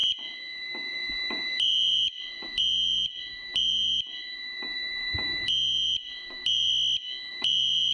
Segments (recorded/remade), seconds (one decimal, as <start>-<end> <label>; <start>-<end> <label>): 0.0-6.7 remade; 6.7-7.3 recorded; 7.3-7.9 remade